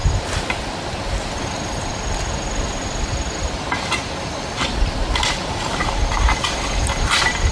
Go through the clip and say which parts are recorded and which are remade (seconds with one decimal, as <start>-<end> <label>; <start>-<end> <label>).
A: 0.0-7.5 recorded